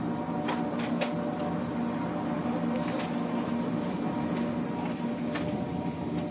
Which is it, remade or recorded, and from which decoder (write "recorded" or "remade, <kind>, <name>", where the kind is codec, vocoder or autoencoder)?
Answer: recorded